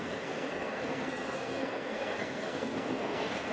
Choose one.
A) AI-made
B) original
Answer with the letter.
A